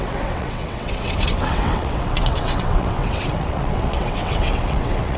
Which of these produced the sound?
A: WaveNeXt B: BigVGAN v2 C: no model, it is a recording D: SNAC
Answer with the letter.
A